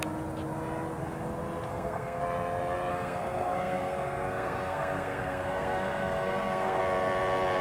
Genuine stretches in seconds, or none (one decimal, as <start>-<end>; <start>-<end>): 0.0-1.7; 2.2-2.9; 6.8-7.6